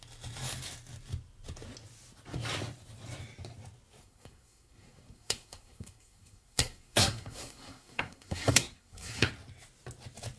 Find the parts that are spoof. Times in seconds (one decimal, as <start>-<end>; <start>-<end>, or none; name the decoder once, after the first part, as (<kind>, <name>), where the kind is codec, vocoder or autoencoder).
4.0-9.3 (codec, SNAC)